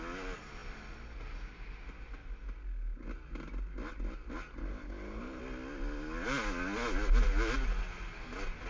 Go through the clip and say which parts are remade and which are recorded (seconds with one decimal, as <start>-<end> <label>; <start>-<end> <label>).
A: 0.0-4.6 recorded; 4.6-5.4 remade; 5.4-8.7 recorded